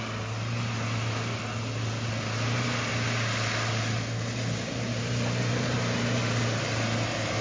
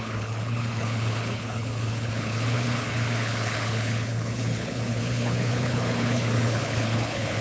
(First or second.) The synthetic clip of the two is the second